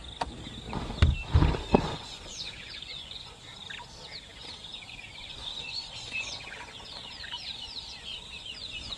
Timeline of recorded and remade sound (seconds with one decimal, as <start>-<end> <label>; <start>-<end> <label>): 0.0-1.7 recorded; 1.7-3.5 remade; 3.5-4.2 recorded; 4.2-9.0 remade